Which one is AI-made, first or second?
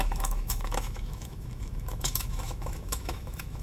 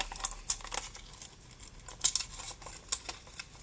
first